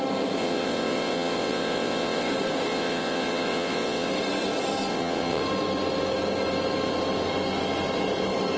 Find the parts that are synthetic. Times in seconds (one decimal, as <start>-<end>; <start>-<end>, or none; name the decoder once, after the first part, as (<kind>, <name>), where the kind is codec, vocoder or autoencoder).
0.4-2.3 (vocoder, WaveNeXt); 2.7-4.1; 4.9-5.4